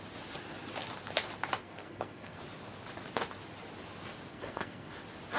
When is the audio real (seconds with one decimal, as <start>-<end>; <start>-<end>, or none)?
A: 0.0-1.6; 2.4-4.3; 4.9-5.4